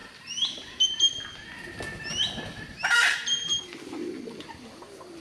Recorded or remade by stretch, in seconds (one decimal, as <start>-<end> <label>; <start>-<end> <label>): 0.0-0.9 remade; 0.9-2.7 recorded; 2.7-3.6 remade; 3.6-5.2 recorded

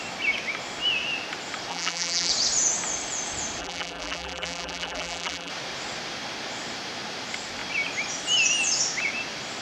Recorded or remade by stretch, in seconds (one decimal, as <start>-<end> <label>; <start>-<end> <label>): 0.0-1.7 recorded; 1.7-2.3 remade; 2.3-3.6 recorded; 3.6-5.5 remade; 5.5-9.6 recorded

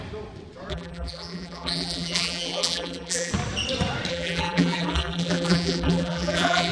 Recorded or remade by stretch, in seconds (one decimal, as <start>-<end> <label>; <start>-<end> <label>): 0.0-0.7 recorded; 0.7-3.3 remade; 3.3-4.1 recorded; 4.1-6.7 remade

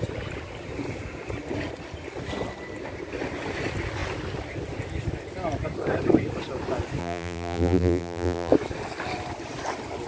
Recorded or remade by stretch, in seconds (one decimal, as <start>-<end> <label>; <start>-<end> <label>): 0.0-7.0 recorded; 7.0-8.5 remade; 8.5-10.1 recorded

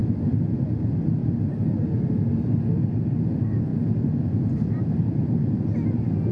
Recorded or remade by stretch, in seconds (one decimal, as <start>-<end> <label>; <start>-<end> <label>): 0.0-1.2 recorded; 1.2-2.3 remade; 2.3-3.7 recorded; 3.7-5.4 remade; 5.4-6.3 recorded

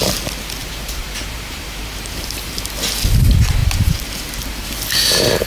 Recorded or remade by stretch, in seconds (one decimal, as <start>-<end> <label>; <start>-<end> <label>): 0.0-0.6 recorded; 0.6-2.5 remade; 2.5-3.6 recorded; 3.6-4.7 remade; 4.7-5.5 recorded

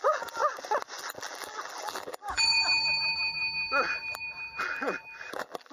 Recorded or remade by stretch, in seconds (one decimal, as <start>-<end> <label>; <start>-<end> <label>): 0.0-0.4 remade; 0.4-1.0 recorded; 1.0-3.4 remade; 3.4-3.9 recorded; 3.9-5.7 remade